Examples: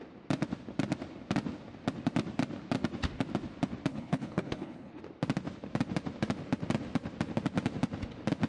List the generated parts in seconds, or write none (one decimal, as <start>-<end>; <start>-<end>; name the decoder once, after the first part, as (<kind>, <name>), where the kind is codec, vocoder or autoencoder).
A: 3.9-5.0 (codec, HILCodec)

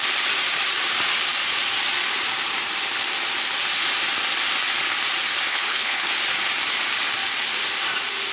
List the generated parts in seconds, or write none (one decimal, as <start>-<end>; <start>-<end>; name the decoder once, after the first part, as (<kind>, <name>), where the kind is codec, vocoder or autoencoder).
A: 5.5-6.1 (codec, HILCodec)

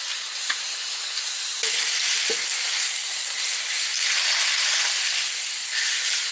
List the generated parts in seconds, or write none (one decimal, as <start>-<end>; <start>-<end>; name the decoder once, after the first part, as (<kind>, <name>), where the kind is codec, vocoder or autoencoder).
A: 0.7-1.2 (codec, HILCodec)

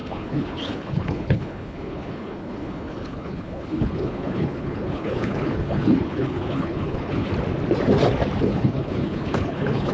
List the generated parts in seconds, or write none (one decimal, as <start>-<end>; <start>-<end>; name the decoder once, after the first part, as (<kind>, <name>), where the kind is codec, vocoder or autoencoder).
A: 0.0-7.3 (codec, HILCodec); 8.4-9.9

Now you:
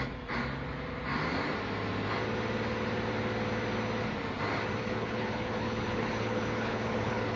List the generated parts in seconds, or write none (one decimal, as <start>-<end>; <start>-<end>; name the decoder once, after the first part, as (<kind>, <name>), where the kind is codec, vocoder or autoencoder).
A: 4.8-7.4 (codec, HILCodec)

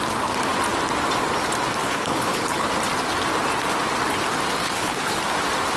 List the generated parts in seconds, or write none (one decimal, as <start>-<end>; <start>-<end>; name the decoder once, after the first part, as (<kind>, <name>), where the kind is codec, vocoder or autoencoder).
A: 1.8-2.7 (codec, HILCodec); 4.6-5.2

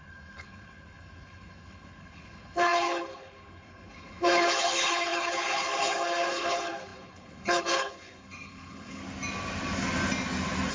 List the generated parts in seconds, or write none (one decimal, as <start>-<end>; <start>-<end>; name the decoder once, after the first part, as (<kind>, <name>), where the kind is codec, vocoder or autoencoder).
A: 0.0-9.0 (codec, HILCodec)